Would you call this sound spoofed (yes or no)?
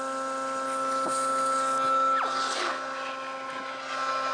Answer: no